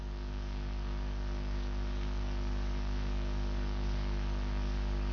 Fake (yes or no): yes